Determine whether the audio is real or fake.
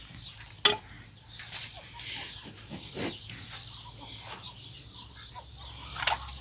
real